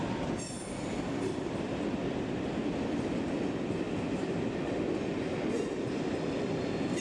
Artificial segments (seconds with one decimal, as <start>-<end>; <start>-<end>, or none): none